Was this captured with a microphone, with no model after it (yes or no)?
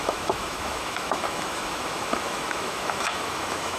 no